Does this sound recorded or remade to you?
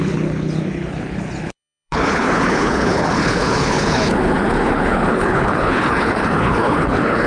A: remade